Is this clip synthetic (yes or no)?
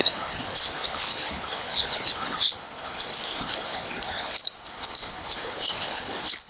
yes